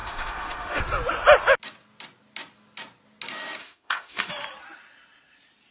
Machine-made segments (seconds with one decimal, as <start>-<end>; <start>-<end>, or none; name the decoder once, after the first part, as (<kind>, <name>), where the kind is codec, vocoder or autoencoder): 0.0-0.8 (autoencoder, DAC-VAE); 3.6-4.3

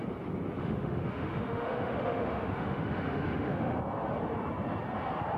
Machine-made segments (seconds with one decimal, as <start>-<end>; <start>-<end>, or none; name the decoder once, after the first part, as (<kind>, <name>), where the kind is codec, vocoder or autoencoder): 0.6-3.8 (autoencoder, DAC-VAE)

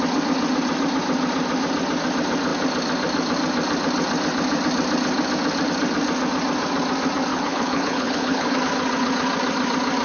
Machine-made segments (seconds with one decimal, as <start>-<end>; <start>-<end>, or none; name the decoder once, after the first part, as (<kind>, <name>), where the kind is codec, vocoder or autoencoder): 7.3-8.6 (codec, HILCodec)

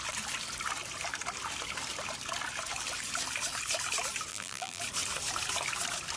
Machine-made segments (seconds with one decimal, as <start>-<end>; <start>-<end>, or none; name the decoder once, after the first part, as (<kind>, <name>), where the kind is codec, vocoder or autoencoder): 4.3-4.8 (vocoder, BigVGAN v2)

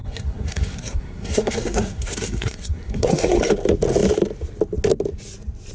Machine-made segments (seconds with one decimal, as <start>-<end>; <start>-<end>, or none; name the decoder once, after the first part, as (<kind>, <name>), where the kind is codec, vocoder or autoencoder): 0.0-3.4 (codec, SNAC)